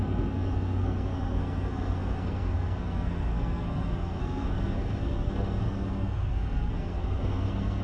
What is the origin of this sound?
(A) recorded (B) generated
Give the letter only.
B